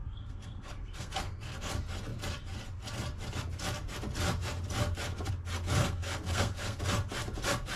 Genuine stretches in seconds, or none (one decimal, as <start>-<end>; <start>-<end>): 1.7-5.8; 6.8-7.8